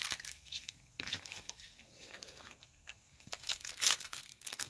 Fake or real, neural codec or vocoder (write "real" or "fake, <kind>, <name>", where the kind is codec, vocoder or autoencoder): fake, codec, SNAC